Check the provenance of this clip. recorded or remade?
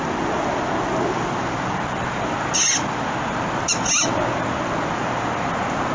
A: recorded